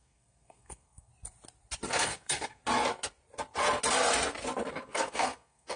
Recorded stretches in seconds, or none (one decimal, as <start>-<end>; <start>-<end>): 1.1-1.9; 2.6-4.7